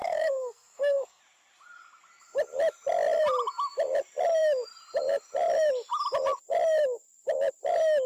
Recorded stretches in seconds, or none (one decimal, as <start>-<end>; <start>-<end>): 1.2-8.1